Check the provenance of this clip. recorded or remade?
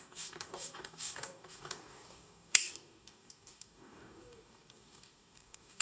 remade